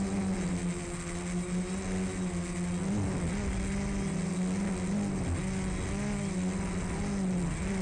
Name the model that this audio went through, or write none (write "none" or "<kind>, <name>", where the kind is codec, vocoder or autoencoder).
none